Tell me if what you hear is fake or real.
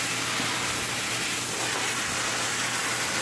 real